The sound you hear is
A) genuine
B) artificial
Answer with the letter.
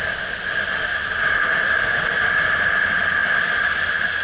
A